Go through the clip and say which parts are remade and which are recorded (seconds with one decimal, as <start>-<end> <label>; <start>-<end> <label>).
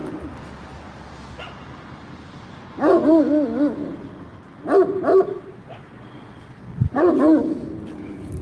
0.0-5.1 recorded; 5.1-7.1 remade; 7.1-8.4 recorded